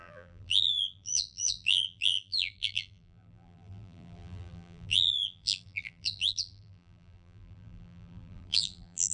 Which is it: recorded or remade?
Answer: remade